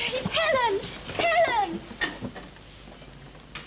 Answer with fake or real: real